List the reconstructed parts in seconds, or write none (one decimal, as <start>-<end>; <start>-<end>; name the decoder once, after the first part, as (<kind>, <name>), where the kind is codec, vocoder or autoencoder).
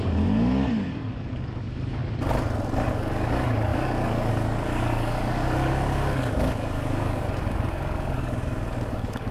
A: 0.0-2.0 (codec, DAC); 2.9-9.3